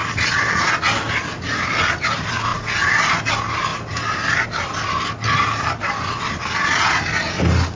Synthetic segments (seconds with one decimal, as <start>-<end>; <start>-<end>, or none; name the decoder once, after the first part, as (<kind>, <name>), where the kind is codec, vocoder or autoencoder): 0.0-0.6 (vocoder, BigVGAN v2); 3.7-6.0